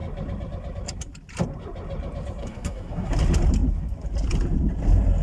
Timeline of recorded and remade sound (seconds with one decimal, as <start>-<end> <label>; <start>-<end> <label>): 0.0-2.4 recorded; 2.4-3.1 remade; 3.1-5.2 recorded